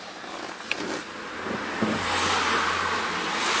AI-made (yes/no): no